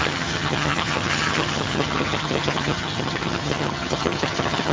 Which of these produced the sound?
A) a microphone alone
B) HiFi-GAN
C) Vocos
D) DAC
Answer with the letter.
B